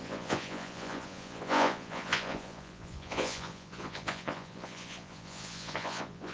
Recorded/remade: remade